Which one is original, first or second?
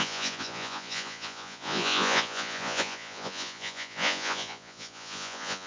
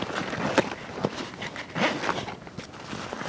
second